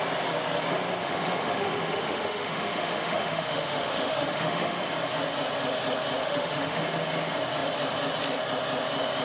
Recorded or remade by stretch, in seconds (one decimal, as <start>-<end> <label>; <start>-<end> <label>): 0.0-1.0 recorded; 1.0-4.8 remade; 4.8-6.2 recorded; 6.2-6.8 remade; 6.8-9.2 recorded